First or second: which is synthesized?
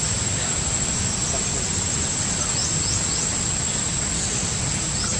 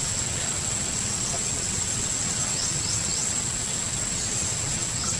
second